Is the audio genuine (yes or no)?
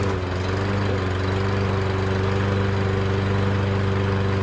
yes